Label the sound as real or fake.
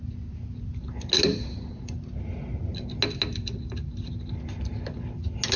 real